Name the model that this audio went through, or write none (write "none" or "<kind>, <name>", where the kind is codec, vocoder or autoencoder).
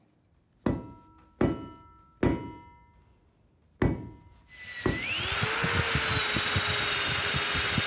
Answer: none